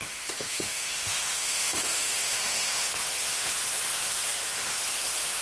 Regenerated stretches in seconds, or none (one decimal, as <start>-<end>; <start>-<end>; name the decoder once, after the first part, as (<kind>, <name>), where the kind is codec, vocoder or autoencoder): 0.0-5.4 (autoencoder, DAC-VAE)